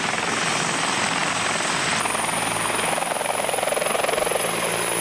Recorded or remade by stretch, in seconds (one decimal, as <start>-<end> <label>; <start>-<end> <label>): 0.0-5.0 recorded